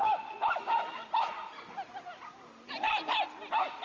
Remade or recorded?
recorded